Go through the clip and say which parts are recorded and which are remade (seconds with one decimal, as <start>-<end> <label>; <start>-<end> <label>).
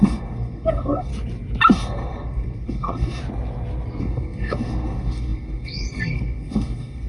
0.0-1.1 remade; 1.1-1.7 recorded; 1.7-3.2 remade; 3.2-4.0 recorded; 4.0-7.1 remade